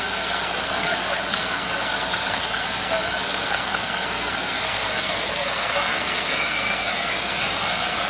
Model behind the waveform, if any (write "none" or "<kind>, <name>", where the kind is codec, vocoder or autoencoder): codec, SNAC